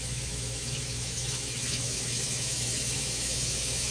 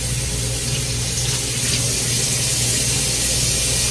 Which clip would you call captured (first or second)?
second